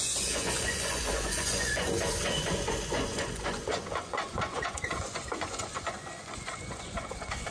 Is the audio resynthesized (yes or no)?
yes